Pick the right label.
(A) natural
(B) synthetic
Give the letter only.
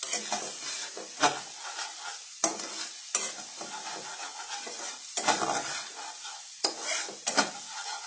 A